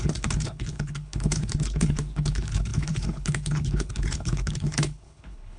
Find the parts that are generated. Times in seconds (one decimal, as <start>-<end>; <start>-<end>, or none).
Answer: 0.0-5.6